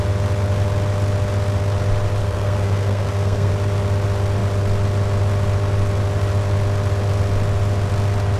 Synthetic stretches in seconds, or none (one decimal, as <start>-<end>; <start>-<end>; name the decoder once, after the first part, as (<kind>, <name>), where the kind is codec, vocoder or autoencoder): 2.2-3.5 (codec, SNAC)